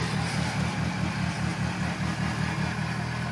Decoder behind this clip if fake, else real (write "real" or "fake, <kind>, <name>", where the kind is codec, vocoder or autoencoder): real